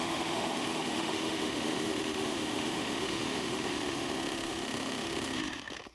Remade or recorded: remade